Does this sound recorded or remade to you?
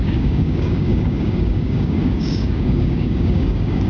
remade